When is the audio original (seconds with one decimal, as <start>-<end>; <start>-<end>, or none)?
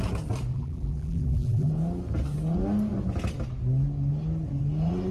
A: 0.0-0.5; 1.7-5.1